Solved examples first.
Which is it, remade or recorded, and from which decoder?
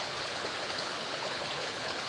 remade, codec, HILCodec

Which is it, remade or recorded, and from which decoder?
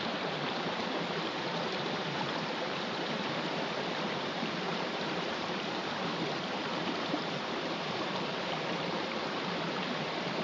remade, vocoder, BigVGAN v2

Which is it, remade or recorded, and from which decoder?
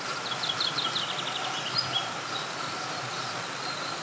recorded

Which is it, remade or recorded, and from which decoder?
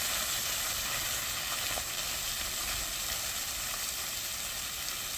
recorded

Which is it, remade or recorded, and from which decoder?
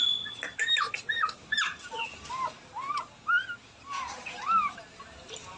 recorded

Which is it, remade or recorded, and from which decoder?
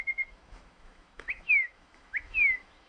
remade, autoencoder, DAC-VAE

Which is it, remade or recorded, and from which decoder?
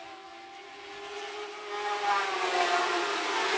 recorded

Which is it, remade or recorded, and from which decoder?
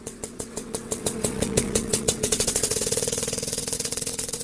remade, vocoder, WaveNeXt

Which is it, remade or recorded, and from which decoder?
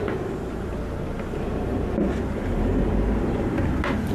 recorded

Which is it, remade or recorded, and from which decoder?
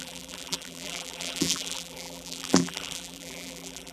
remade, vocoder, BigVGAN v2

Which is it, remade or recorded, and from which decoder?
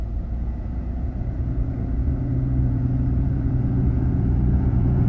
remade, vocoder, Vocos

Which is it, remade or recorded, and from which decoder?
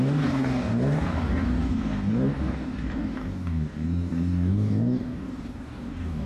remade, codec, DAC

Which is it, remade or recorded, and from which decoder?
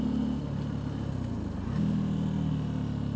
recorded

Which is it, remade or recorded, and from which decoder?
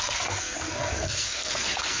remade, codec, SNAC